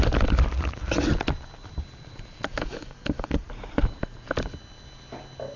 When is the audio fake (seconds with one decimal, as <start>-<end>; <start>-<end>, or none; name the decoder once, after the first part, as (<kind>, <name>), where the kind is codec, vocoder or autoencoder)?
2.5-3.4 (codec, DAC)